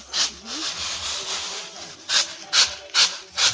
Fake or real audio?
real